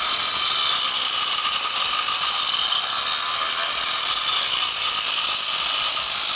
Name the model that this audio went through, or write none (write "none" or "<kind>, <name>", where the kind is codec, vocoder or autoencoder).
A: none